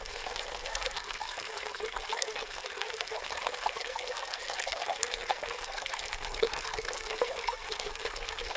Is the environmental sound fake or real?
fake